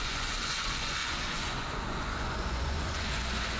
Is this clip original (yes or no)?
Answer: no